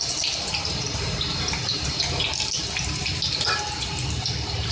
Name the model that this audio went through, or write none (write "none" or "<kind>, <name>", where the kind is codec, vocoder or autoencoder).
none